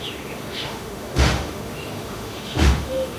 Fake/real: fake